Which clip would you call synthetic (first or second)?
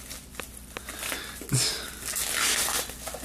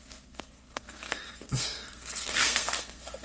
second